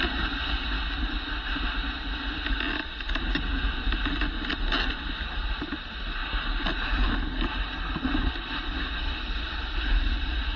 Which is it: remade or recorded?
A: recorded